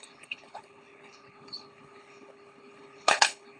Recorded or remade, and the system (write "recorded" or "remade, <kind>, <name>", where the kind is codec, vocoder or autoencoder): remade, codec, HILCodec